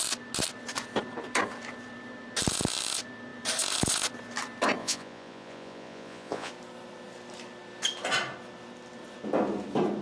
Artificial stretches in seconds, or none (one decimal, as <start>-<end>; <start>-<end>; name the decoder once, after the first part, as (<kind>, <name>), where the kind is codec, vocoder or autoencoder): 4.8-6.5 (vocoder, Vocos)